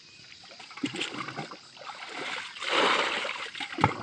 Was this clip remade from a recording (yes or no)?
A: no